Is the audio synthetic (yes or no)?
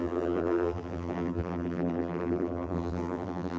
yes